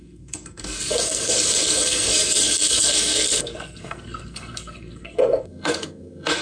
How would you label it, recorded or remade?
remade